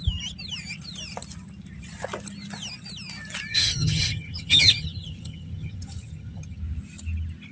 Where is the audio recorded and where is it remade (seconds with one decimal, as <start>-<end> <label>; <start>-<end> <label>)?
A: 0.0-3.5 recorded; 3.5-6.6 remade; 6.6-7.5 recorded